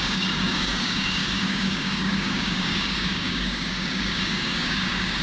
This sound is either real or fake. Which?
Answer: fake